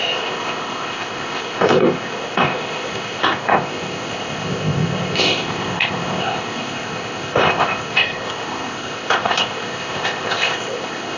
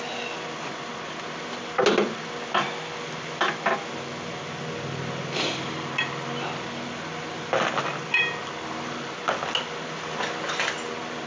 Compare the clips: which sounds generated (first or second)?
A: first